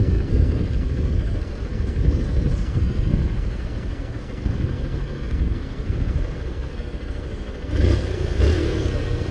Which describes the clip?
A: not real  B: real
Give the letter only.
A